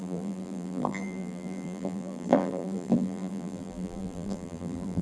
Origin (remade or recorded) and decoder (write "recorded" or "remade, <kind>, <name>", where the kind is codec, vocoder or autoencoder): remade, vocoder, BigVGAN v2